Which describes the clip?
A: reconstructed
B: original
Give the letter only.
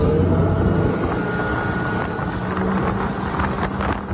B